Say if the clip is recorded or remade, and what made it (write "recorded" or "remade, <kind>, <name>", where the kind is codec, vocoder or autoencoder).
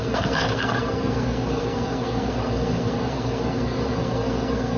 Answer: remade, codec, SNAC